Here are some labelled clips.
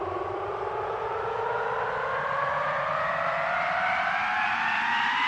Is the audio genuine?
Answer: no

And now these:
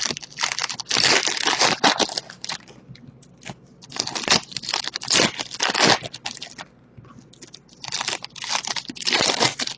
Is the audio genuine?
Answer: yes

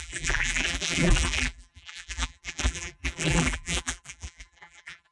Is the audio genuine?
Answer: no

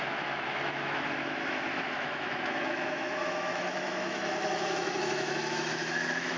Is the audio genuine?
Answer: no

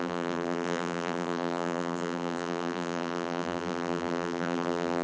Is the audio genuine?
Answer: no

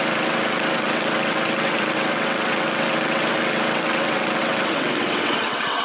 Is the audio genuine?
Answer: no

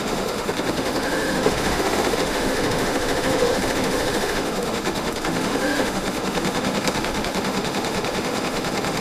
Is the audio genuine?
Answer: no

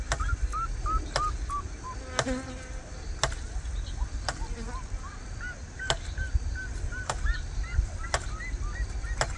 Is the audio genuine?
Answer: yes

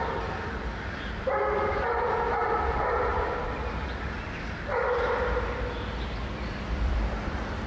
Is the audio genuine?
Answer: no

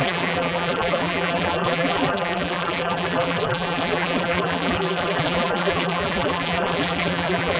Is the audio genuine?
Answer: no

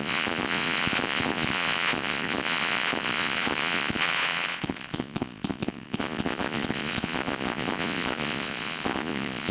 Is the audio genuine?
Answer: no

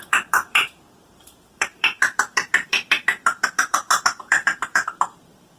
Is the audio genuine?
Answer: no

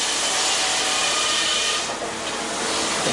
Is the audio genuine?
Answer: yes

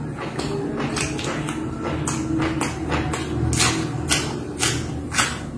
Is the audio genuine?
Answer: yes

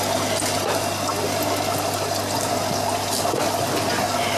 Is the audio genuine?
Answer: yes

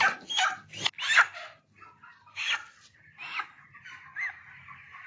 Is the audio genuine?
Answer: yes